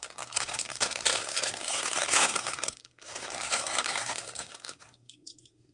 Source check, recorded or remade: remade